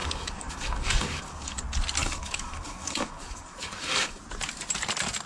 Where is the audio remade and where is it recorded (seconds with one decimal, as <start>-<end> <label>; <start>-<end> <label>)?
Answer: 0.0-1.6 remade; 1.6-2.0 recorded; 2.0-4.2 remade; 4.2-5.3 recorded